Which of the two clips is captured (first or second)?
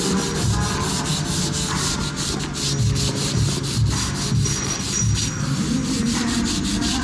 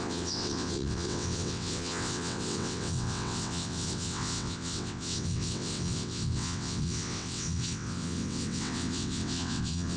first